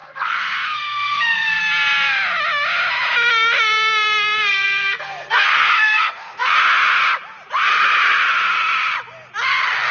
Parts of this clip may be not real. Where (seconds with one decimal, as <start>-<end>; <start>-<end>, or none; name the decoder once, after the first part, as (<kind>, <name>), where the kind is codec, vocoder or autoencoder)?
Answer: 0.0-1.6 (codec, SNAC); 4.5-6.5